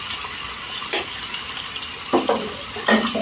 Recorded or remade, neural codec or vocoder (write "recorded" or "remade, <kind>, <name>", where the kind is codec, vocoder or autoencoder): recorded